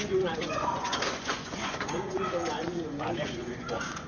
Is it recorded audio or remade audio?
remade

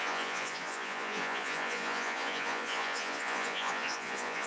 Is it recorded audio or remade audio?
remade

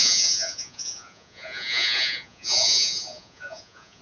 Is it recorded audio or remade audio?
remade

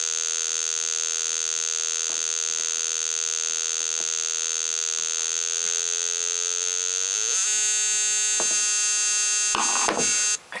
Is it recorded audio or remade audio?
recorded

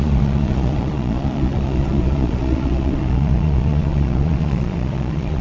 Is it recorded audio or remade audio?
remade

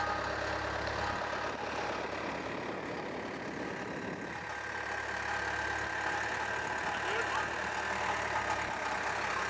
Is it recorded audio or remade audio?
recorded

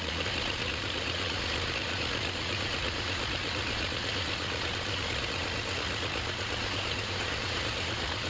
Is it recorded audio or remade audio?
remade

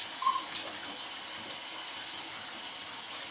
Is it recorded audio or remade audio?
recorded